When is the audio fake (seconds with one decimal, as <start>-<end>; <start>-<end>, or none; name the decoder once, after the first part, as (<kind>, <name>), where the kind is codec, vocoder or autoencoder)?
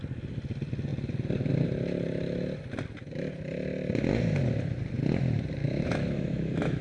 5.6-6.8 (autoencoder, DAC-VAE)